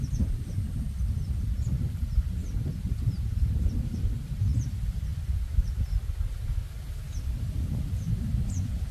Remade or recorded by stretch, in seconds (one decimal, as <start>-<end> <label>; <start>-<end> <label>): 0.0-6.6 recorded; 6.6-8.1 remade; 8.1-8.9 recorded